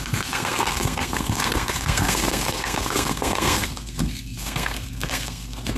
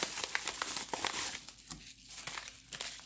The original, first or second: second